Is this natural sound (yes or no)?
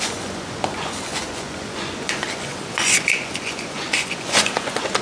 no